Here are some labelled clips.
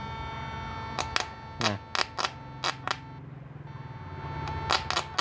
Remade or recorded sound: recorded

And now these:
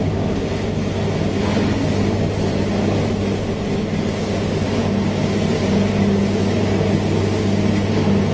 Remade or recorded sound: recorded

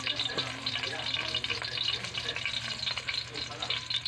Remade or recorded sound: recorded